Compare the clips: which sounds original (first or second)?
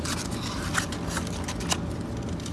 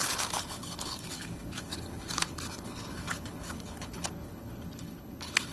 first